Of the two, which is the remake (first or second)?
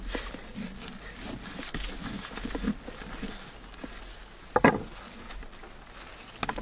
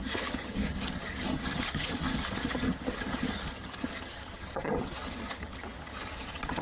second